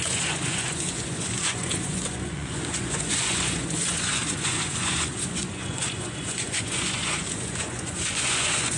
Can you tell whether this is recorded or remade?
remade